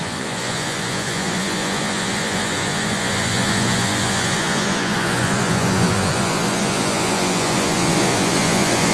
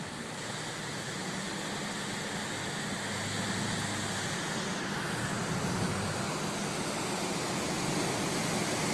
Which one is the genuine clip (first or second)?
second